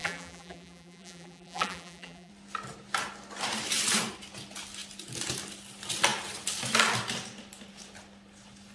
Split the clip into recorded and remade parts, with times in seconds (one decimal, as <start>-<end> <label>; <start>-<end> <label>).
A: 0.0-2.3 remade; 2.3-8.7 recorded